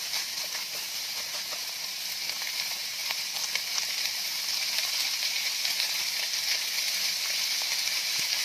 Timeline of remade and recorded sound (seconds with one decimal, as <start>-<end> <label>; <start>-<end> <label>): 0.0-8.4 recorded